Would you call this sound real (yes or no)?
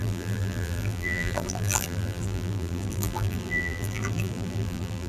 no